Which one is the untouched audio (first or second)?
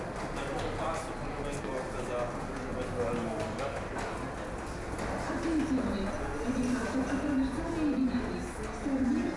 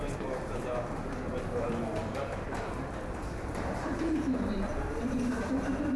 first